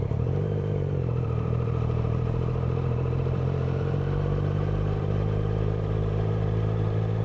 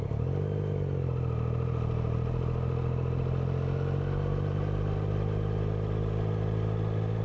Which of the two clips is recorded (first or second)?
second